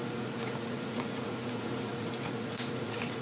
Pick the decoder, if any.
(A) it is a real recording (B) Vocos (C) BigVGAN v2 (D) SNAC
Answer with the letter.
B